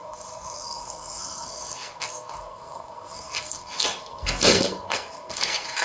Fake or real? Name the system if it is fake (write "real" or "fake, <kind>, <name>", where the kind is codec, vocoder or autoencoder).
fake, codec, SNAC